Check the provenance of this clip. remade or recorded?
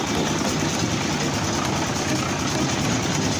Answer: recorded